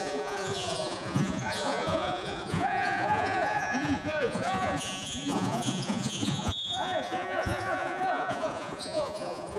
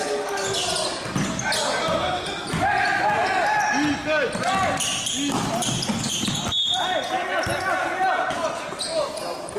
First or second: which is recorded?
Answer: second